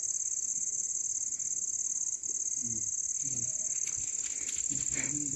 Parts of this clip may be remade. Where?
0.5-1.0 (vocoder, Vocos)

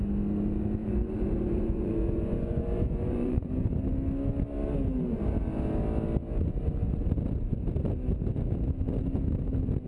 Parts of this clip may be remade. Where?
0.8-3.5 (vocoder, Vocos)

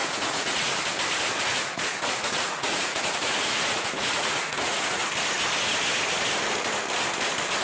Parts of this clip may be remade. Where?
0.0-0.7 (vocoder, Vocos); 1.5-5.0